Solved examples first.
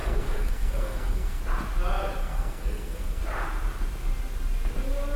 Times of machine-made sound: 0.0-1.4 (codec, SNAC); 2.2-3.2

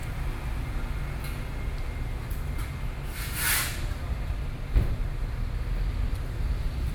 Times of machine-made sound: none